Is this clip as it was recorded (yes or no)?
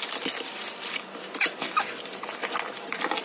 yes